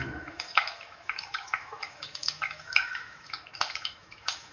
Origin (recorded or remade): remade